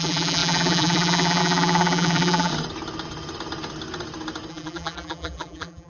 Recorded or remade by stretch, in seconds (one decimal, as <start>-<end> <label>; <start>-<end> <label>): 0.0-2.5 remade; 2.5-4.5 recorded; 4.5-5.9 remade